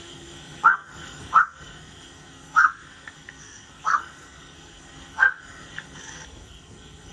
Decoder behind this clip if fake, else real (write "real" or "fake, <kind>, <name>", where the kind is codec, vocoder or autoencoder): fake, codec, SNAC